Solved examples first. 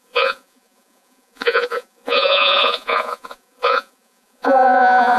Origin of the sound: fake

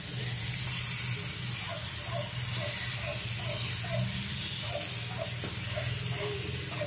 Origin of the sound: real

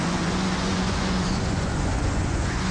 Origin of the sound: fake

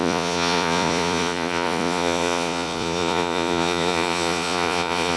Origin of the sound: fake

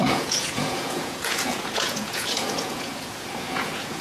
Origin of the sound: fake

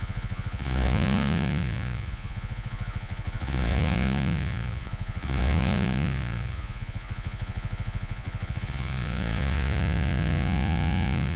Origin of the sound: fake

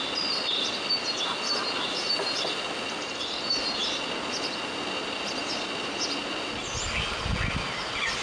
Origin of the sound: real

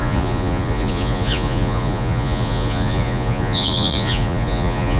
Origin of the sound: fake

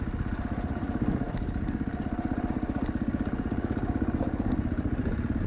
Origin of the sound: real